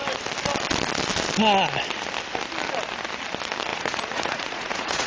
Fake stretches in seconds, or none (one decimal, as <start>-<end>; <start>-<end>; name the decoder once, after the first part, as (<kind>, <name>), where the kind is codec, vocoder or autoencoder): 3.7-5.1 (vocoder, Vocos)